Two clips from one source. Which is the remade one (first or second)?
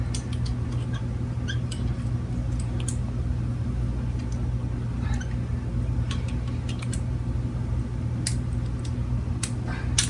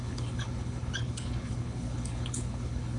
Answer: second